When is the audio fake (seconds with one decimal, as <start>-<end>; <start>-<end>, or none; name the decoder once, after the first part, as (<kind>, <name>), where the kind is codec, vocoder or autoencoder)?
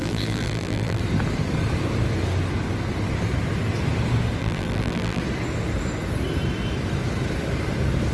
0.0-1.0 (vocoder, BigVGAN v2); 4.4-5.2